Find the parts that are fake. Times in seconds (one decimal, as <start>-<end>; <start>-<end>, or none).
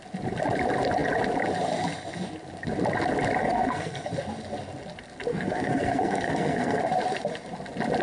3.4-4.1; 5.3-6.8